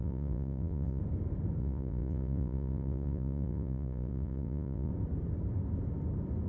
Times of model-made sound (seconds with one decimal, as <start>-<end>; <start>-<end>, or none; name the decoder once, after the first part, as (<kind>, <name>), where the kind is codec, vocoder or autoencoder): 0.0-1.0 (vocoder, Vocos); 1.6-4.9

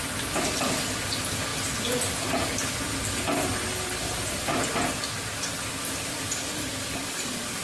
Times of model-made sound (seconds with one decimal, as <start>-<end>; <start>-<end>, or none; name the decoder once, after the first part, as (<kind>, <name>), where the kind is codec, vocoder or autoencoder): none

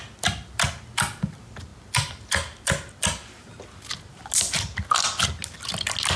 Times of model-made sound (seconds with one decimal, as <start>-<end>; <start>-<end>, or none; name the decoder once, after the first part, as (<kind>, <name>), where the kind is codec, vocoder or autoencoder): none

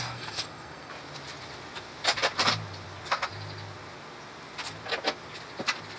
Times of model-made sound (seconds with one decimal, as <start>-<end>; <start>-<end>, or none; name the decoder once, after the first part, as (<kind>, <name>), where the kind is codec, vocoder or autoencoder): 0.0-0.9 (codec, SNAC)